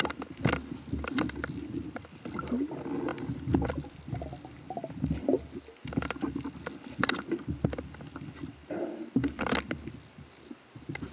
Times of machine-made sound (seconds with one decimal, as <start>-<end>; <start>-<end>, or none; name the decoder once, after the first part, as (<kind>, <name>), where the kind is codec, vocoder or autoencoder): none